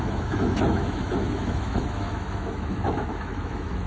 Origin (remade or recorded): remade